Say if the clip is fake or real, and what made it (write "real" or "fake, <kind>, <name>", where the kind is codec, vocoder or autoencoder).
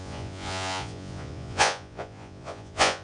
fake, vocoder, Vocos